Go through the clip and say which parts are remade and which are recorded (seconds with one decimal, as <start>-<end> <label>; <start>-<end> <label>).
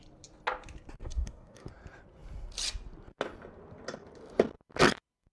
0.0-1.0 recorded; 1.0-1.7 remade; 1.7-5.3 recorded